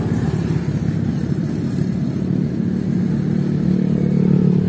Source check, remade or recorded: recorded